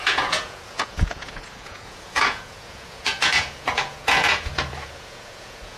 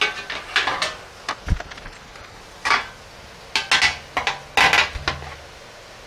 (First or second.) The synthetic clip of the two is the first